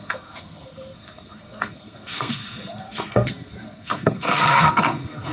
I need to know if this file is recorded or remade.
remade